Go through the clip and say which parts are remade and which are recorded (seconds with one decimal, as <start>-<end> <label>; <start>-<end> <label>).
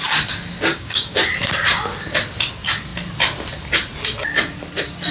0.0-0.7 recorded; 0.7-1.2 remade; 1.2-5.1 recorded